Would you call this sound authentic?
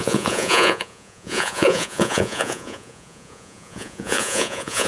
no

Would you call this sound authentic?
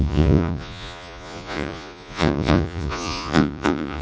no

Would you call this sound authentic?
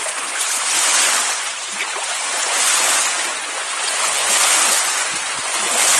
no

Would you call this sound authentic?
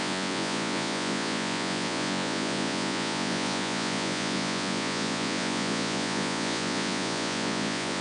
no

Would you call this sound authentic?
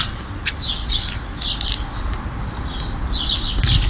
yes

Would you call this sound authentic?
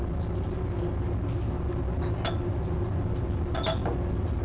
yes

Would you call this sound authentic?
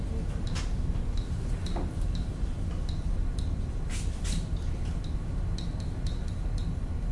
yes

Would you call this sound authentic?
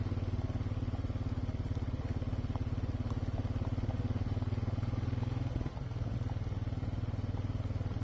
yes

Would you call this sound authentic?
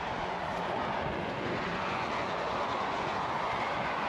no